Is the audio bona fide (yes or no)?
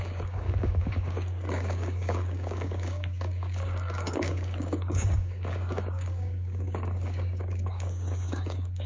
no